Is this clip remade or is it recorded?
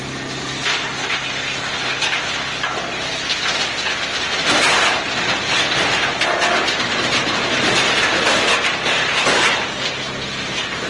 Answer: recorded